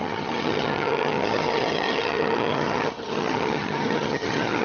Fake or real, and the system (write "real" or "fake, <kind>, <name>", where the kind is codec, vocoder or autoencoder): fake, vocoder, HiFi-GAN